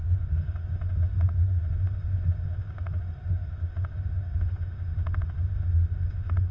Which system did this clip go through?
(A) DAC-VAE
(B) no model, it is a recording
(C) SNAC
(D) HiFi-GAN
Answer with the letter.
A